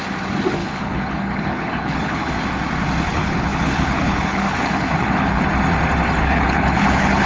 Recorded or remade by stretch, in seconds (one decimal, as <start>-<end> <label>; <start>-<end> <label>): 0.0-0.6 recorded; 0.6-2.3 remade; 2.3-3.1 recorded; 3.1-5.4 remade; 5.4-6.2 recorded; 6.2-7.3 remade